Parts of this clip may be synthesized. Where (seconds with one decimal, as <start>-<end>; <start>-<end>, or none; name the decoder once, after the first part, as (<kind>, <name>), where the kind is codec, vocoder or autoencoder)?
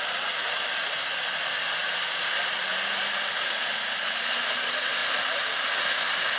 none